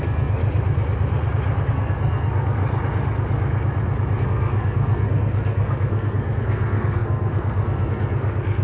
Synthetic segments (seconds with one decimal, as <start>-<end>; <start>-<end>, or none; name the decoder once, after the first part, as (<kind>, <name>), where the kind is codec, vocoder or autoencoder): 0.0-0.4 (codec, SNAC); 1.7-2.6; 4.2-8.6

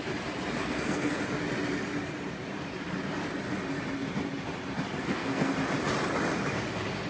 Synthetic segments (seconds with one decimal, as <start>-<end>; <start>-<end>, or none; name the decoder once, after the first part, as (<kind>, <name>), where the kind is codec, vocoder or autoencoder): 0.6-1.2 (codec, SNAC); 5.0-5.5

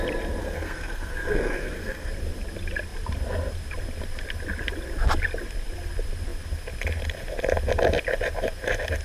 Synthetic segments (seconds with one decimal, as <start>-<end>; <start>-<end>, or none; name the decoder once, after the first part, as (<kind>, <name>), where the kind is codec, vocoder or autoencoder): 0.4-2.1 (codec, SNAC)

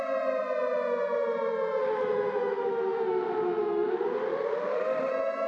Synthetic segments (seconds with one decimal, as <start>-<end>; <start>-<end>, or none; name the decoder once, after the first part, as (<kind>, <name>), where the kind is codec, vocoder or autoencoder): 1.8-5.1 (autoencoder, DAC-VAE)